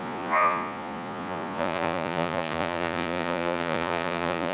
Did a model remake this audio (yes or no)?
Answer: yes